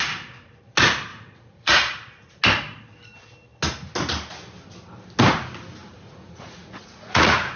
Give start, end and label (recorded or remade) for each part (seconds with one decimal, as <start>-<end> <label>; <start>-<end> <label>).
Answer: 0.0-1.1 recorded; 1.1-2.4 remade; 2.4-5.8 recorded; 5.8-7.6 remade